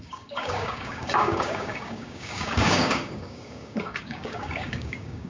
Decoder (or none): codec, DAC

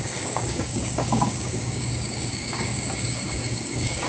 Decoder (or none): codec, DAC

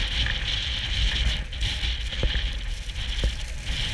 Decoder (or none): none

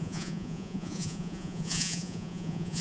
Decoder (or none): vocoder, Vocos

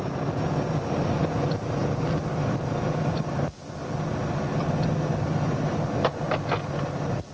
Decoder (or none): none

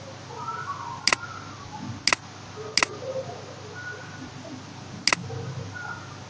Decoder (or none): none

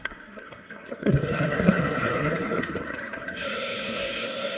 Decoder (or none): codec, SNAC